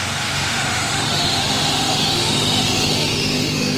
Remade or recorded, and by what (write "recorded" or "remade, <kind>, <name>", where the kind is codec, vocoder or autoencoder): remade, autoencoder, DAC-VAE